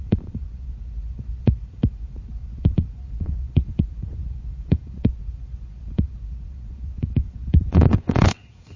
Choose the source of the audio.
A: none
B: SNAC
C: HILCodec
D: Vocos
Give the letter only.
D